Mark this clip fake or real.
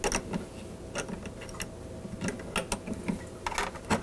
real